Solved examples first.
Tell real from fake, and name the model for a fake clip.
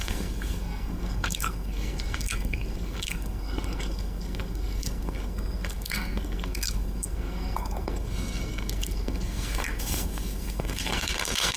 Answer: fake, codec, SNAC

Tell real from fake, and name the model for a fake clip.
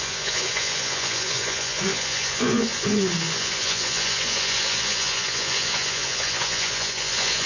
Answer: fake, vocoder, Vocos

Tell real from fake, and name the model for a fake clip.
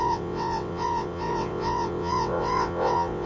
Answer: fake, vocoder, WaveNeXt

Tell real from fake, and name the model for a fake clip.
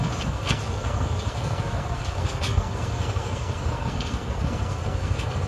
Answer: fake, codec, SNAC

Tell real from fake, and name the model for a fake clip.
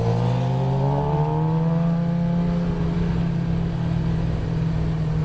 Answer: real